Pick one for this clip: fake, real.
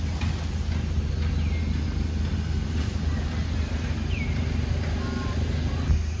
real